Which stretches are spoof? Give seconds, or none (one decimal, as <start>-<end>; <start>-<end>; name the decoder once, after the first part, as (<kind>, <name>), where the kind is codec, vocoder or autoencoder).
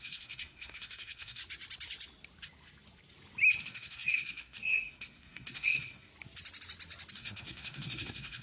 0.0-1.4 (codec, SNAC); 3.6-6.1; 7.1-8.4